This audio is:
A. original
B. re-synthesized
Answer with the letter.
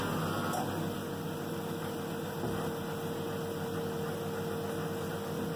A